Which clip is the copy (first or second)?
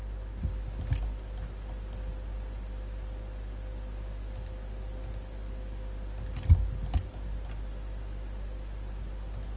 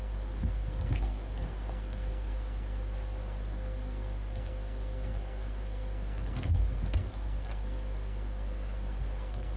second